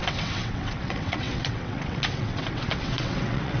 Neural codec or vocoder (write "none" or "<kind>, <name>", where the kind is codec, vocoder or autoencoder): vocoder, WaveNeXt